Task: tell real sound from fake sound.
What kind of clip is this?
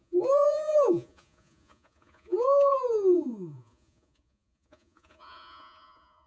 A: fake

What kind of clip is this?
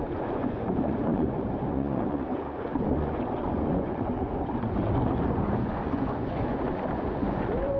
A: fake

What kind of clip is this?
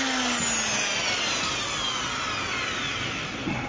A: real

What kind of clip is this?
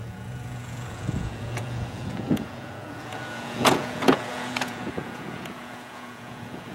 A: fake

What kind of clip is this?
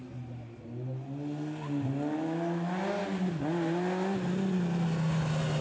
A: real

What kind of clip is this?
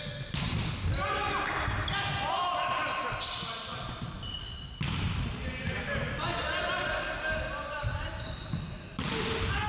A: real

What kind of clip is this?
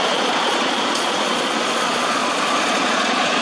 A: fake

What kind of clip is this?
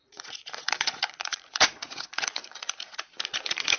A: fake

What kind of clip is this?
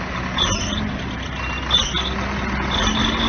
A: real